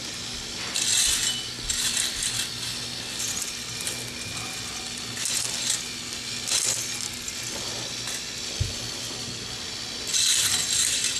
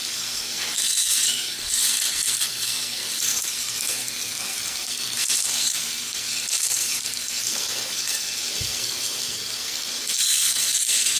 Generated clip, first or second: second